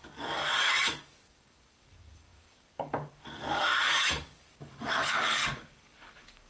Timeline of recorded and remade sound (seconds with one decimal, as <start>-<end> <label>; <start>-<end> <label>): 0.0-6.5 remade